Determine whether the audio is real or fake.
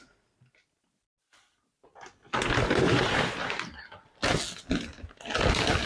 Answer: real